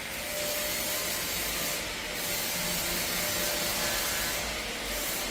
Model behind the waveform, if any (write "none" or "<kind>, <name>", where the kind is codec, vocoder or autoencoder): none